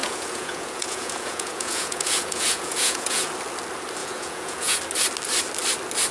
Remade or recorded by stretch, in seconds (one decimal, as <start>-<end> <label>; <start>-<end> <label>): 0.0-3.3 remade; 3.3-4.0 recorded; 4.0-4.8 remade; 4.8-6.1 recorded